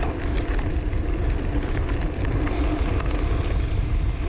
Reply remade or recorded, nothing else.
recorded